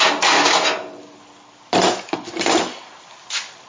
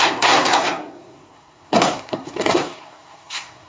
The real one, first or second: first